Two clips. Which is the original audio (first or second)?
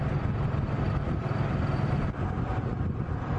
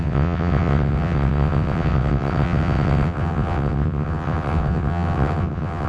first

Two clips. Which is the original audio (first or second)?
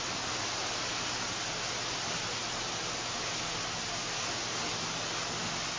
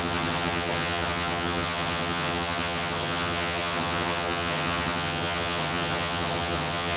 first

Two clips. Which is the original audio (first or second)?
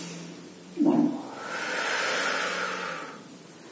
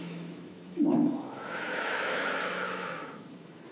first